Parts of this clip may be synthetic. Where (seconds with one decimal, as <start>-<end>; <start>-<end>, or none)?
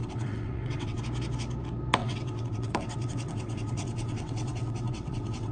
0.0-1.0; 2.0-5.5